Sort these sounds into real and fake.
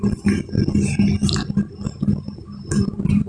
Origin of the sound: real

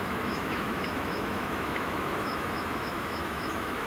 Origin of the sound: fake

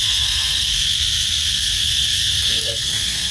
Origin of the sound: fake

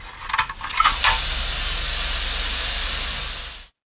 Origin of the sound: real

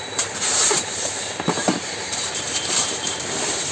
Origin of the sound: fake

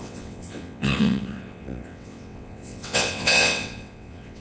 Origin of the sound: fake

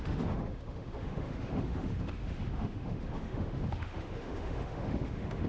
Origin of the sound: fake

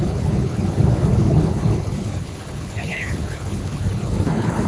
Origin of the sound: fake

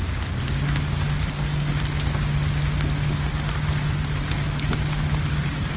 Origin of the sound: real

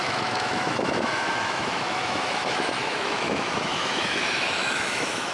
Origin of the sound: fake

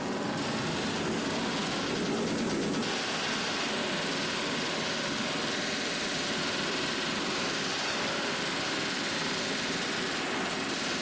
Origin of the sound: real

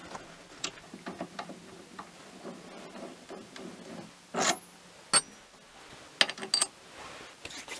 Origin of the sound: real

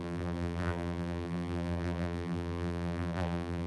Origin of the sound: fake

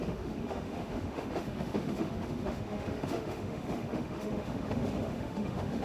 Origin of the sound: fake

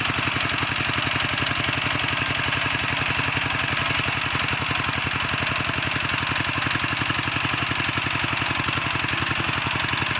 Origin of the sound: real